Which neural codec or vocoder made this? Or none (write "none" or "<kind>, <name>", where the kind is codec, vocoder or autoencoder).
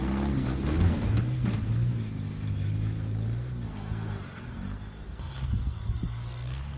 codec, SNAC